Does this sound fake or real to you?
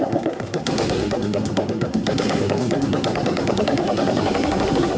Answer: fake